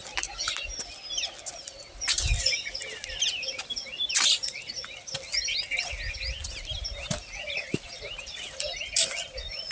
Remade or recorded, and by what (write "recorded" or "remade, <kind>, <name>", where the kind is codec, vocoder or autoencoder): recorded